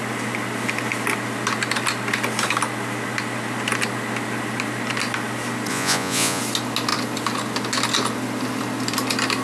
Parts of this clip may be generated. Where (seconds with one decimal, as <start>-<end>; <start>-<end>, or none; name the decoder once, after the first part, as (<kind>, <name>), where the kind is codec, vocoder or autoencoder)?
5.7-6.4 (vocoder, Vocos)